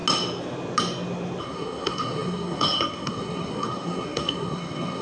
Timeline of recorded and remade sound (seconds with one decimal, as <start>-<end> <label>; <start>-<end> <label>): 0.0-1.4 recorded; 1.4-5.0 remade